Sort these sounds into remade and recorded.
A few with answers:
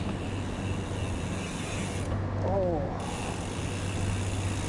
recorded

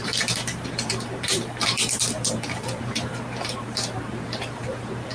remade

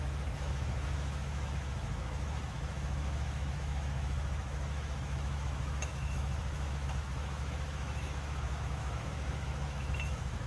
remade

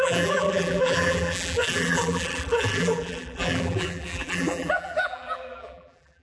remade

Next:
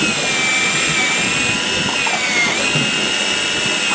recorded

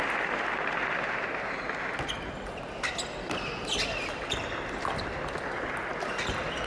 recorded